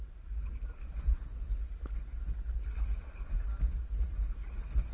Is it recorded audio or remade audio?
recorded